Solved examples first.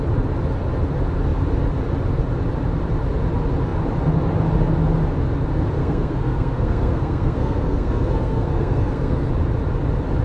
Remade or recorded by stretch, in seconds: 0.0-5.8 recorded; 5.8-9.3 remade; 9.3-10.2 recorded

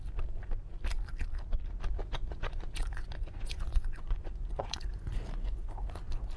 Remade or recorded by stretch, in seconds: 0.0-2.0 recorded; 2.0-5.8 remade; 5.8-6.4 recorded

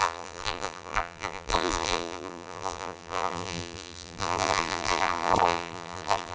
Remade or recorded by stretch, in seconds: 0.0-6.3 remade

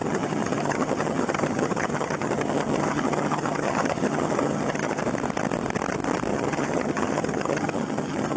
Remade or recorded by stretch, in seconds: 0.0-5.0 remade; 5.0-6.3 recorded; 6.3-8.4 remade